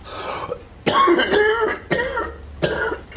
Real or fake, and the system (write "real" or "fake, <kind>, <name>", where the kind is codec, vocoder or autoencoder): real